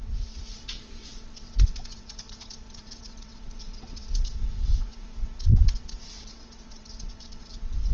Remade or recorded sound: remade